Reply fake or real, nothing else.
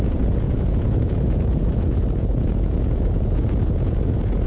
fake